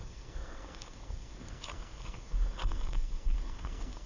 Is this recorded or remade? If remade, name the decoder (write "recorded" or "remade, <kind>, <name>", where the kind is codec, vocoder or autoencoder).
remade, codec, SNAC